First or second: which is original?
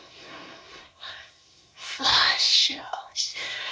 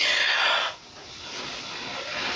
second